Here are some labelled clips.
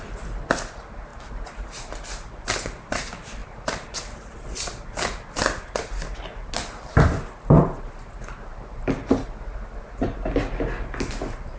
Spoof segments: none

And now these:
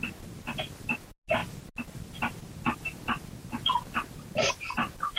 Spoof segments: none

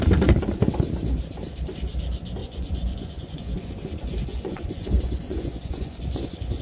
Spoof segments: 2.4-6.6 (vocoder, Vocos)

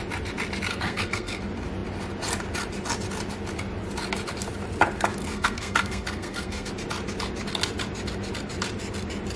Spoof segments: 0.7-1.4 (codec, SNAC); 5.2-6.7

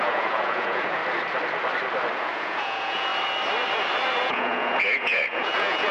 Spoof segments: 0.0-1.0 (vocoder, Vocos); 2.2-3.1; 4.2-5.9

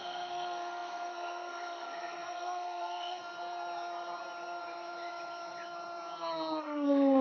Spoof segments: 0.0-3.2 (codec, SNAC); 6.6-7.2

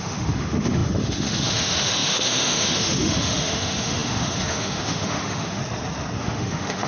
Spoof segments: 0.0-5.6 (autoencoder, DAC-VAE); 6.2-6.9

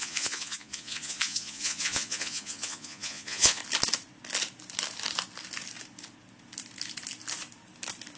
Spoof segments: 0.0-3.6 (vocoder, Vocos)